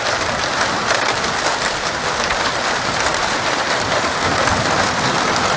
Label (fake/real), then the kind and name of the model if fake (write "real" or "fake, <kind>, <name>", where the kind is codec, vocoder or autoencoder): real